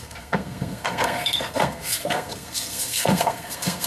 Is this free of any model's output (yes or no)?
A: no